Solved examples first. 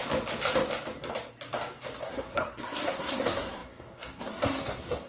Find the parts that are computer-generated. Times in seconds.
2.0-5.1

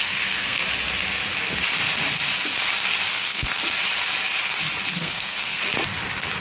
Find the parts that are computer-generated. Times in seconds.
0.0-0.6; 3.1-3.5; 4.9-5.6

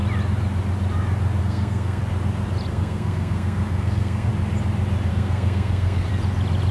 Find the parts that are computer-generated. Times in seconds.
1.4-2.0; 2.7-4.3; 5.1-6.1

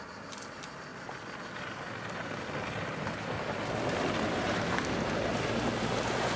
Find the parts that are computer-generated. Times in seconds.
none

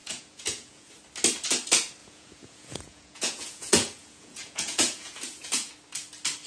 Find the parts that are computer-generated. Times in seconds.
0.0-0.9; 2.0-5.7

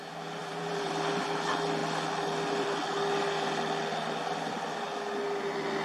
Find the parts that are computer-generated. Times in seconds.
0.4-0.9

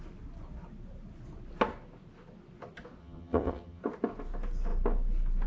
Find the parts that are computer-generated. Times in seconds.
3.0-3.8

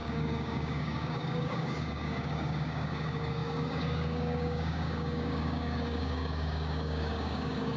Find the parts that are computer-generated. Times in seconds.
0.0-7.8